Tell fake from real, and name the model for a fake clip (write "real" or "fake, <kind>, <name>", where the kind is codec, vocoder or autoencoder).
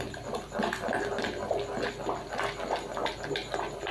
real